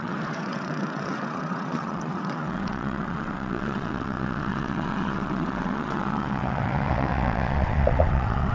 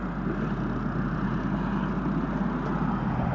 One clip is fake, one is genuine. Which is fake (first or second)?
first